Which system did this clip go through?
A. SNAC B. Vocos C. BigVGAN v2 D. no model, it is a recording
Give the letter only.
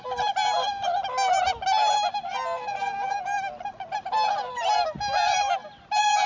D